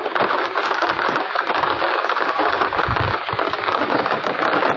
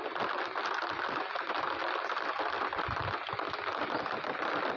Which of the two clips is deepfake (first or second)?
first